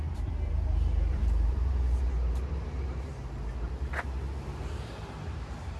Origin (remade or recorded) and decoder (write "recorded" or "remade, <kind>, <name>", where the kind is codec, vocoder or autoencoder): remade, vocoder, BigVGAN v2